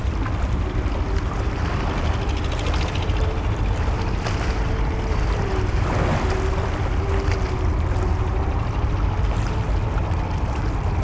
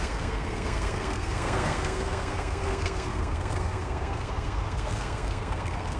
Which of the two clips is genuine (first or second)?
first